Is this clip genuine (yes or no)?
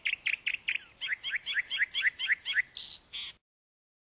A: yes